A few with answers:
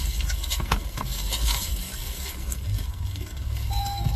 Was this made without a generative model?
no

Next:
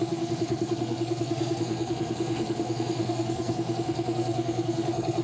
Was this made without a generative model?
no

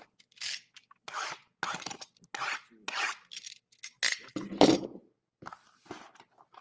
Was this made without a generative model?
yes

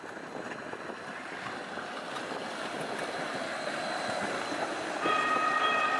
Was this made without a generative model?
yes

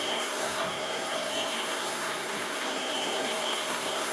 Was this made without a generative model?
no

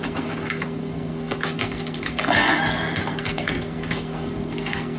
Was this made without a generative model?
no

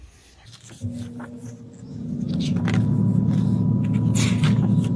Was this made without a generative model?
yes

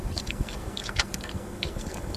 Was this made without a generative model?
no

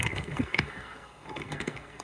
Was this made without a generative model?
no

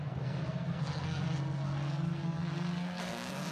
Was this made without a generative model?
no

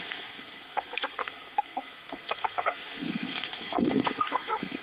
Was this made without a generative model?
no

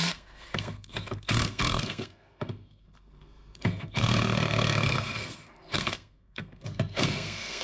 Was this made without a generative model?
no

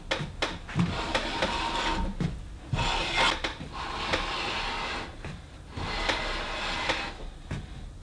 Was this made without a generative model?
yes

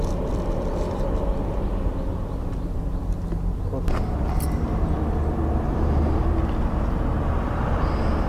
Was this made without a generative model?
yes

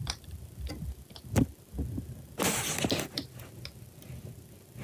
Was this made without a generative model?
yes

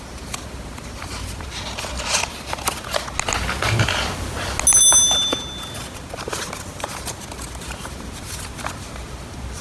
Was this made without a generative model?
yes